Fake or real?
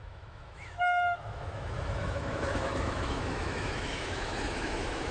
fake